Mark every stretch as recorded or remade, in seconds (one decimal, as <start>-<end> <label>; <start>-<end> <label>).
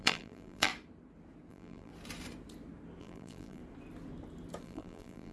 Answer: 0.0-0.7 remade; 0.7-1.5 recorded; 1.5-1.9 remade; 1.9-3.0 recorded; 3.0-3.6 remade; 3.6-4.6 recorded; 4.6-5.3 remade